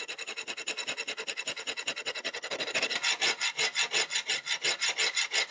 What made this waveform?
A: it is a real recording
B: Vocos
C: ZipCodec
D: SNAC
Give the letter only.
A